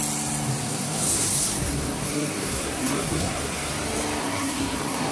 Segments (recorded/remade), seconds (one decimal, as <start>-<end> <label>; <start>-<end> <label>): 0.0-0.6 recorded; 0.6-3.7 remade; 3.7-4.2 recorded; 4.2-5.1 remade